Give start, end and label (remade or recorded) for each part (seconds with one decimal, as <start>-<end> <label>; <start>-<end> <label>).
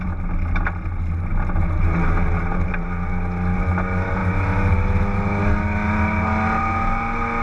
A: 0.0-7.4 recorded